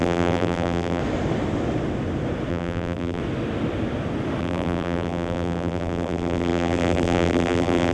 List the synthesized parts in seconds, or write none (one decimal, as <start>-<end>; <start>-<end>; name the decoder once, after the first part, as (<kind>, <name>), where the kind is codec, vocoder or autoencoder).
0.0-1.0 (vocoder, BigVGAN v2); 2.5-3.2; 4.4-7.9

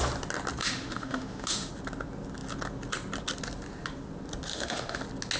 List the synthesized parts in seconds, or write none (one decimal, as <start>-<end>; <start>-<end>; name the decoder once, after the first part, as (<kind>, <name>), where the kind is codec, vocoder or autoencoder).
0.6-1.7 (autoencoder, DAC-VAE); 4.5-5.0

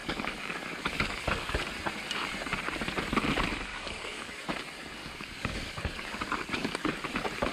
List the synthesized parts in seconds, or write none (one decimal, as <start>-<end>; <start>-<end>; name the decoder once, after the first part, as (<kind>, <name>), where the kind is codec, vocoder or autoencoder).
0.0-1.6 (codec, DAC); 3.7-4.3; 5.0-7.1

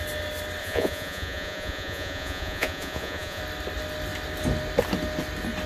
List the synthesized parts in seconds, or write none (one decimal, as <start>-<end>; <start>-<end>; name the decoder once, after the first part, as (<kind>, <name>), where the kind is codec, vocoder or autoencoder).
0.6-3.4 (vocoder, Vocos)